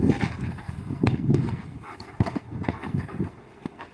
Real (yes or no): no